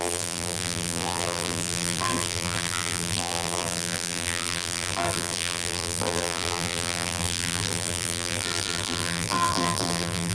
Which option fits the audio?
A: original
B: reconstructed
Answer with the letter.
B